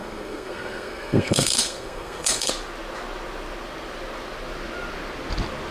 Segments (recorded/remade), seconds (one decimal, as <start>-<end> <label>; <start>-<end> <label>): 0.0-2.5 remade; 2.5-5.7 recorded